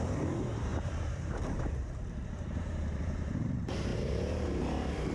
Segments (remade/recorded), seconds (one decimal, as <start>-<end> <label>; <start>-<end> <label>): 0.0-5.1 remade